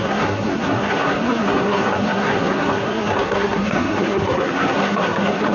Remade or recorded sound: remade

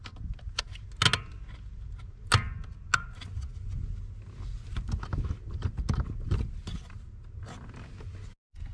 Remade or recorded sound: recorded